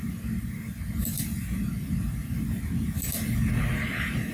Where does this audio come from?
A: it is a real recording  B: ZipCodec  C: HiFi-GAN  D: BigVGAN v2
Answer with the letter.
A